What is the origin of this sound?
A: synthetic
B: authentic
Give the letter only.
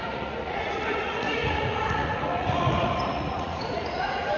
A